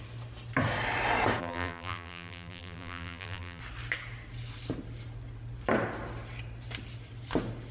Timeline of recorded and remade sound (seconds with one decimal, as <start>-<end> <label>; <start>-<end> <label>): 0.0-1.4 recorded; 1.4-3.6 remade; 3.6-7.7 recorded